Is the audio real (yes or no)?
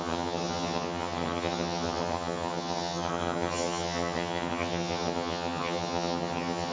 no